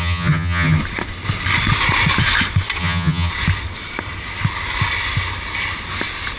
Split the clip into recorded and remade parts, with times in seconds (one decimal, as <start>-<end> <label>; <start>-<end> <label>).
0.0-0.8 remade; 0.8-2.8 recorded; 2.8-3.3 remade; 3.3-6.4 recorded